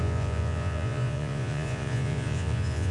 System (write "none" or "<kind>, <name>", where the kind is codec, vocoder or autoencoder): vocoder, Vocos